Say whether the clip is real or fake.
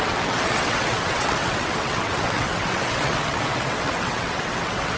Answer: fake